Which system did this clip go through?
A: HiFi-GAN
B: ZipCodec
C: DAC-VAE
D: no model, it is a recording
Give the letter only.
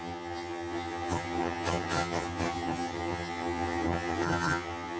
A